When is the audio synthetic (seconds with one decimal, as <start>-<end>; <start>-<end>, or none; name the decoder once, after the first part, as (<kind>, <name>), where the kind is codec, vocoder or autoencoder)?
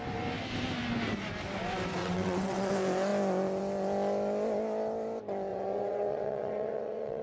2.0-2.7 (vocoder, WaveNeXt); 5.5-7.2